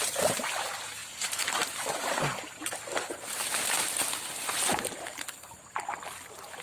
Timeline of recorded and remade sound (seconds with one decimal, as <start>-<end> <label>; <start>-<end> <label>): 0.0-6.6 recorded